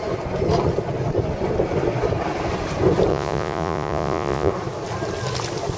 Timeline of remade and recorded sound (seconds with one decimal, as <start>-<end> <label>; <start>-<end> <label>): 0.0-3.1 recorded; 3.1-4.5 remade; 4.5-5.8 recorded